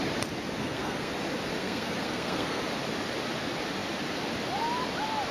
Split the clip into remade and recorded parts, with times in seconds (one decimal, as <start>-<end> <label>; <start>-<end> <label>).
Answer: 0.0-0.6 recorded; 0.6-1.1 remade; 1.1-1.6 recorded; 1.6-2.6 remade; 2.6-5.3 recorded